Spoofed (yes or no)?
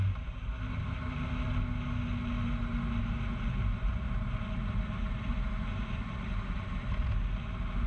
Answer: no